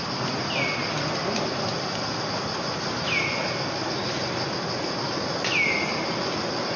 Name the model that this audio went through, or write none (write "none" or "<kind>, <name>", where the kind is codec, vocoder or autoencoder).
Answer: none